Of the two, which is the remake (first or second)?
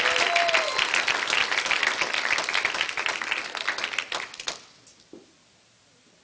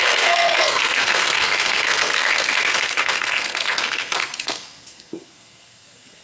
second